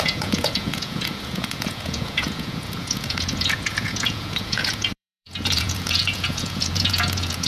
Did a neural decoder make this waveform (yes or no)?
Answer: yes